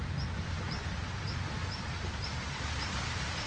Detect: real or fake fake